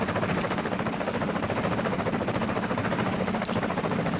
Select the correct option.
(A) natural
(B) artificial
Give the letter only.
A